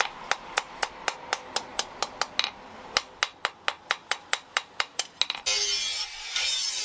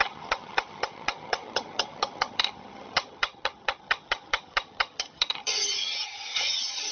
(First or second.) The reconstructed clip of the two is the second